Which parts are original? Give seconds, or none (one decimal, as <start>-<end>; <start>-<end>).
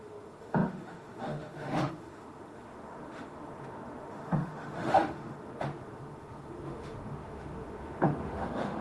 none